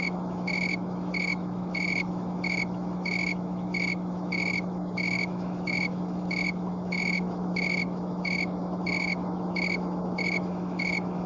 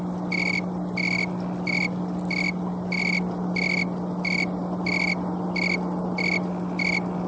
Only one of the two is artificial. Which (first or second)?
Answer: first